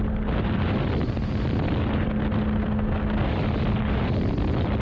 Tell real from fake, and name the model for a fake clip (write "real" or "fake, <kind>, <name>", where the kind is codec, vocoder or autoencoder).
real